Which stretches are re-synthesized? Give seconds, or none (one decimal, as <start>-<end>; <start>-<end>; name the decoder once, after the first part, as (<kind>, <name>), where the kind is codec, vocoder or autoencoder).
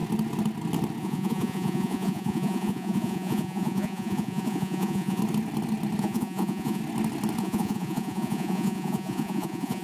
1.0-5.2 (vocoder, Vocos); 6.0-6.8; 7.4-9.8